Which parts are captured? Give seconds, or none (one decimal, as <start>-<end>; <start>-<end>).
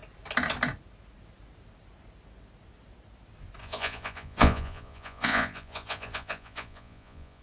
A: 0.0-3.6